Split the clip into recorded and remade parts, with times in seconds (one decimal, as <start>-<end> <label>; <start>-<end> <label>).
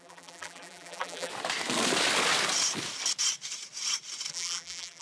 0.0-1.3 remade; 1.3-4.3 recorded; 4.3-5.0 remade